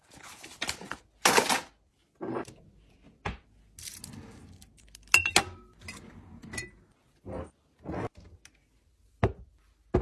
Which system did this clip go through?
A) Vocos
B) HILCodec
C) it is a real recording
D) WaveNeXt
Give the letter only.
C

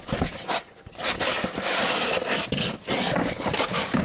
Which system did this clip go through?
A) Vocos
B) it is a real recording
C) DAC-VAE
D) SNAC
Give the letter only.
B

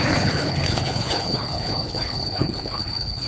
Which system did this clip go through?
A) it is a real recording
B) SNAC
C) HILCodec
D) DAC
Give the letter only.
C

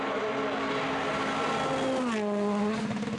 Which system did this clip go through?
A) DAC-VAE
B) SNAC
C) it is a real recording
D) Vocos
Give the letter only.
C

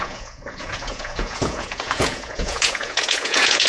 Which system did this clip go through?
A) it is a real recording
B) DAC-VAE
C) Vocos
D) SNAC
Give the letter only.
C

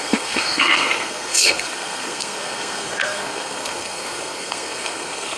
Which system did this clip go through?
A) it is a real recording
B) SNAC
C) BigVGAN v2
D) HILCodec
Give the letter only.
B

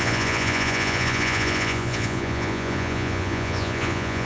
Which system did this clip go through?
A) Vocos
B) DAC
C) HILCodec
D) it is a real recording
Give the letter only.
A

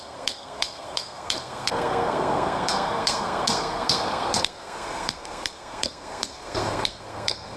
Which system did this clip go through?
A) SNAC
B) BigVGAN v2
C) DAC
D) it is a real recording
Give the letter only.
A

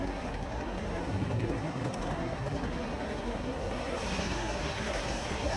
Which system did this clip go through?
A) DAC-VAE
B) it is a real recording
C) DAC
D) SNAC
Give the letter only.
D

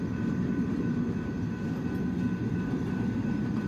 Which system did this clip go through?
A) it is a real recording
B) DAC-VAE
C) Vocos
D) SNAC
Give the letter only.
A